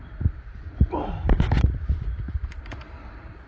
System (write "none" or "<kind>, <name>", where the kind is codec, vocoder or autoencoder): none